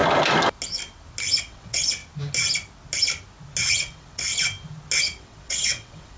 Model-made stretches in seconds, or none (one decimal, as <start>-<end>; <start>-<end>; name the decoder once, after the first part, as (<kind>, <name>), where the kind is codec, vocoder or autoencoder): 1.4-2.0 (vocoder, WaveNeXt); 3.7-4.3; 5.0-6.2